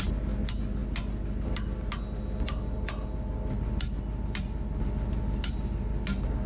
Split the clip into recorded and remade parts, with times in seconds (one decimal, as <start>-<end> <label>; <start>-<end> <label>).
0.0-6.5 recorded